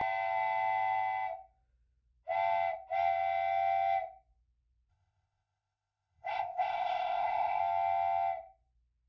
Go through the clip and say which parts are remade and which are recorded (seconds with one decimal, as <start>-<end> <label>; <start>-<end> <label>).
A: 0.0-4.9 recorded; 4.9-7.6 remade; 7.6-9.1 recorded